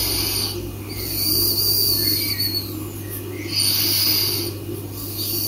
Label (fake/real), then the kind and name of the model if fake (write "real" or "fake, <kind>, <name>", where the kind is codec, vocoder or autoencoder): real